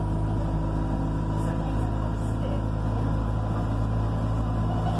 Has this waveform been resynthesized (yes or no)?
no